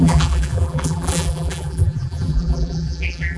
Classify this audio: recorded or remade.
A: remade